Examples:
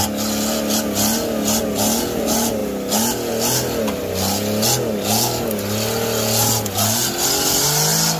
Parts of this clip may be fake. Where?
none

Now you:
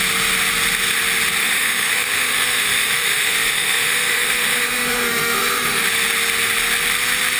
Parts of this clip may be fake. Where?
1.4-5.8 (autoencoder, DAC-VAE)

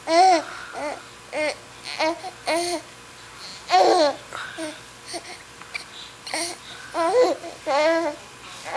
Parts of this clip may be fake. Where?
none

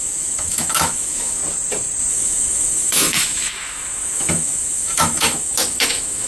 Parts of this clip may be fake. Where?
0.0-1.4 (autoencoder, DAC-VAE); 2.1-6.3